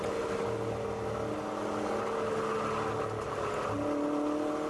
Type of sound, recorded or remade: recorded